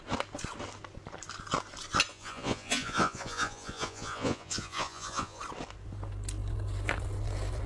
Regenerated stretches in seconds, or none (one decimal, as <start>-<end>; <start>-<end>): 2.1-5.4